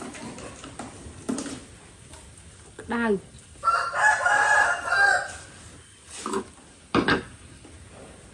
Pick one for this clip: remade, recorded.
recorded